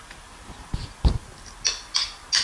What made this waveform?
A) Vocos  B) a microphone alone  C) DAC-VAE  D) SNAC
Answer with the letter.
B